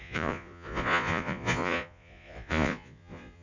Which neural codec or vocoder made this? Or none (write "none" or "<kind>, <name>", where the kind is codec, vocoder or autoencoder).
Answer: vocoder, Vocos